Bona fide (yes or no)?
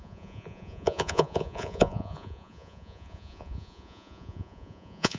no